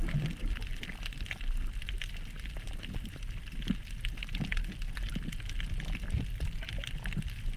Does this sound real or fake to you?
real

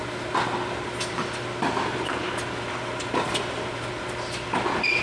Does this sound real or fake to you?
real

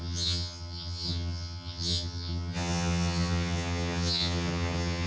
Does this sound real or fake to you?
fake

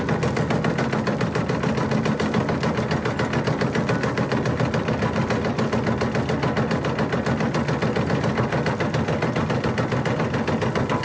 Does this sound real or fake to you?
real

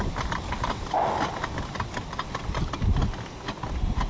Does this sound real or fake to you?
real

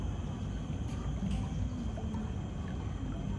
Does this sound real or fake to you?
real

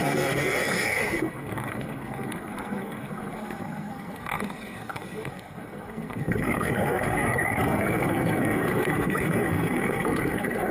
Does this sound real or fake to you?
fake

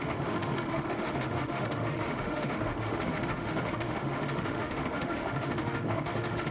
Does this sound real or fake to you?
fake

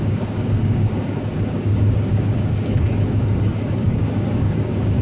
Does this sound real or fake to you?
fake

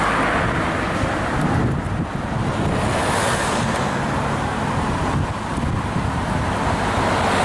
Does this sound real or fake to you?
real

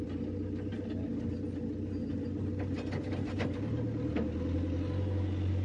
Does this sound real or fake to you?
real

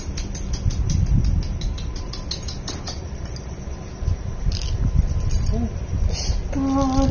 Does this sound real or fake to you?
real